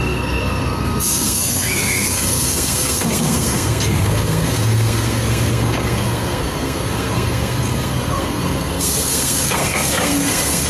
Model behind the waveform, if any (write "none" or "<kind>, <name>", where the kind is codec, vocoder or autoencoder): codec, SNAC